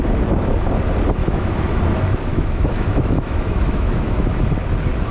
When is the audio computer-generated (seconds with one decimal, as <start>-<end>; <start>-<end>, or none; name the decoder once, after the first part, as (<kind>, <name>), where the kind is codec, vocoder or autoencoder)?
1.2-1.8 (autoencoder, DAC-VAE); 2.3-4.3